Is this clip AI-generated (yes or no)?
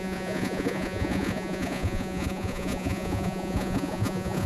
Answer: yes